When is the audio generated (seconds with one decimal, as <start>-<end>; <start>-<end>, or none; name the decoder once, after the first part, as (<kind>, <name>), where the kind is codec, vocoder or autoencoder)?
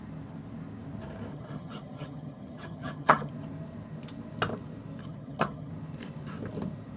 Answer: 1.3-3.3 (vocoder, HiFi-GAN); 5.0-5.7